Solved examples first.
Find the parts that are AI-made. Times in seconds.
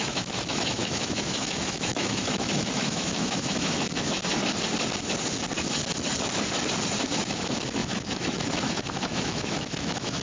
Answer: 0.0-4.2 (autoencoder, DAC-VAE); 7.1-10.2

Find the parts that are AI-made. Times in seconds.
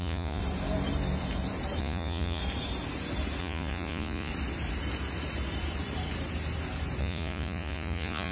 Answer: 0.0-0.4 (vocoder, Vocos); 1.8-2.4; 3.4-4.3; 7.0-8.3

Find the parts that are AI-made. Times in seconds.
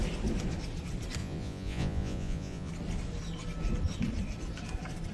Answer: 1.2-2.7 (vocoder, Vocos)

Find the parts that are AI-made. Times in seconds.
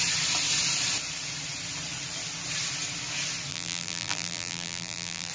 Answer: 3.5-5.3 (vocoder, BigVGAN v2)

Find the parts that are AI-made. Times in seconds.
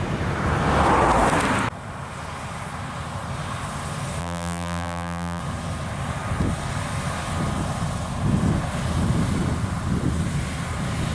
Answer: 4.2-5.4 (vocoder, BigVGAN v2)